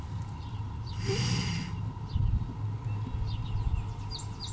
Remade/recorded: recorded